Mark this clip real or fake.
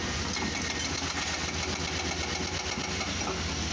real